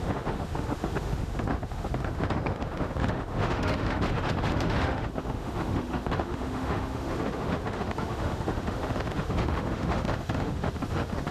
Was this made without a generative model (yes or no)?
no